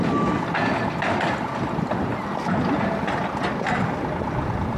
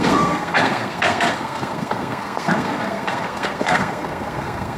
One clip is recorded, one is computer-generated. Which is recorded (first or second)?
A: first